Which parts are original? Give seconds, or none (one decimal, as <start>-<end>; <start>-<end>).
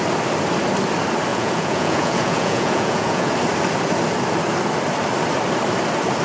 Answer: 0.0-1.3; 3.3-6.2